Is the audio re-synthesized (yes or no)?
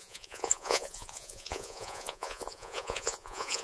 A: yes